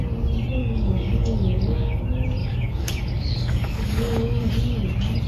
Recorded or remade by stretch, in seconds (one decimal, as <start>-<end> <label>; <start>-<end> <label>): 0.0-0.6 recorded; 0.6-2.0 remade; 2.0-2.4 recorded; 2.4-4.5 remade; 4.5-5.3 recorded